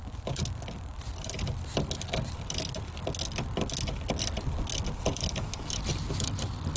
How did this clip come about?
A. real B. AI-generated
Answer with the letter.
A